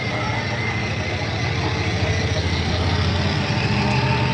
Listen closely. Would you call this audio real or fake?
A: real